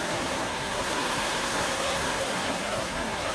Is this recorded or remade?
remade